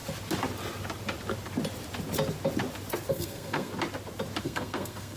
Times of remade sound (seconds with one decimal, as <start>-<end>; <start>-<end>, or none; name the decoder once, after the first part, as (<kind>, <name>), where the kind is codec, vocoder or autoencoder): 3.1-3.7 (codec, SNAC); 4.4-5.2